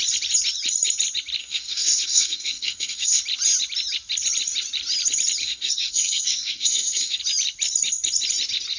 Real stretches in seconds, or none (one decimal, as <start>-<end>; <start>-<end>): 0.0-1.4; 3.2-5.4; 7.2-8.8

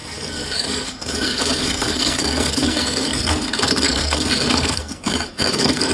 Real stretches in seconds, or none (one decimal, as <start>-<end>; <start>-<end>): none

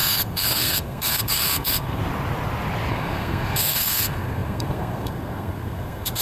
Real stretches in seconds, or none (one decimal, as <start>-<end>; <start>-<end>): 2.0-2.9

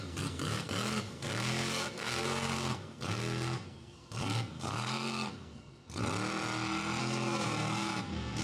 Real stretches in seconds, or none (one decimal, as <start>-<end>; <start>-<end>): 6.0-7.0

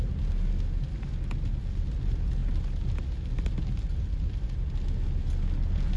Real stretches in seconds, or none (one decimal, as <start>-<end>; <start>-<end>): 0.0-6.0